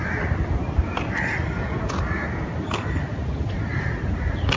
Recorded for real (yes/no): yes